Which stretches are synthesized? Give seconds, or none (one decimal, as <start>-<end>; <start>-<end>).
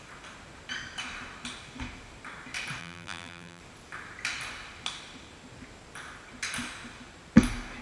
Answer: 2.8-3.6